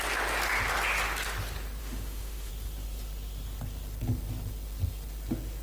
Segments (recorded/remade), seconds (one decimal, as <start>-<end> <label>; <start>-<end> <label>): 0.0-1.8 recorded; 1.8-2.5 remade; 2.5-5.6 recorded